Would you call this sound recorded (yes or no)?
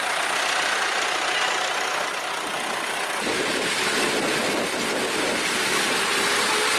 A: yes